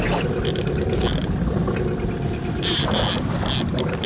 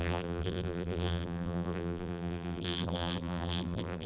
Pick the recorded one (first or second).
first